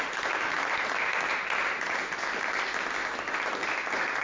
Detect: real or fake real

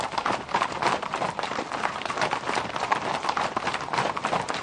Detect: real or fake real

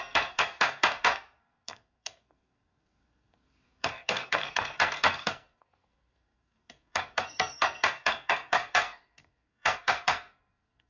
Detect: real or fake fake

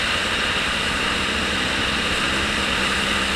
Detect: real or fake fake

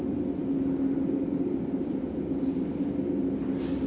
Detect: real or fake real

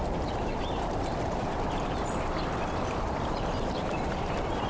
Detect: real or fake fake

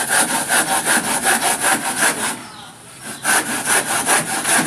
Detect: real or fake real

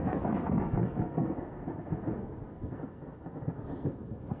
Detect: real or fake fake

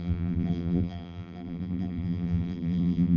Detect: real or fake fake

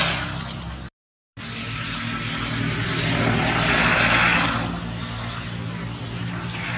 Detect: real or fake real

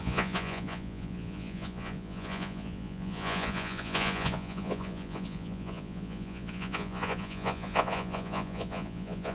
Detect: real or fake fake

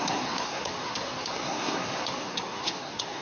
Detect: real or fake fake